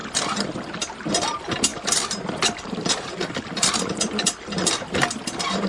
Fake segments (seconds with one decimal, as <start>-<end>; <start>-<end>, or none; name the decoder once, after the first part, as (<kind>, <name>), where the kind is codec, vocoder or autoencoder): 1.7-5.1 (vocoder, BigVGAN v2)